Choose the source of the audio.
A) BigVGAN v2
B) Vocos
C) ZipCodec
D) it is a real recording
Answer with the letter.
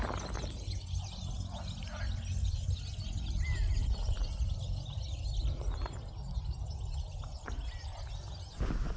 D